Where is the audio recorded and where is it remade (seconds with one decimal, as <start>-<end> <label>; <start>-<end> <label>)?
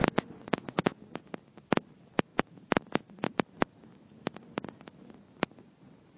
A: 0.0-1.0 remade; 1.0-6.2 recorded